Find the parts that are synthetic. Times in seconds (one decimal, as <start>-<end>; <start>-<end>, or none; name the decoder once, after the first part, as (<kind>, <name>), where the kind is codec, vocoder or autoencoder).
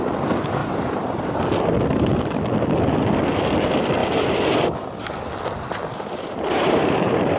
0.6-1.4 (vocoder, BigVGAN v2); 5.8-7.4